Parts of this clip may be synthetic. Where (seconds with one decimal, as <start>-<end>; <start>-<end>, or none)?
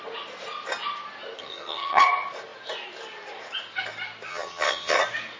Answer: 1.4-2.0; 4.3-5.0